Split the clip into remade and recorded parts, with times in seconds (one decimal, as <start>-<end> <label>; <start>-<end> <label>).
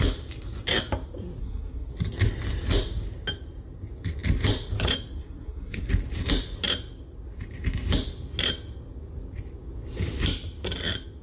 0.0-1.4 recorded; 1.4-1.9 remade; 1.9-5.2 recorded; 5.2-5.9 remade; 5.9-11.2 recorded